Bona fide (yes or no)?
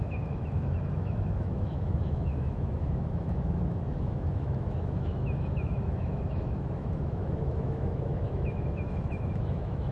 no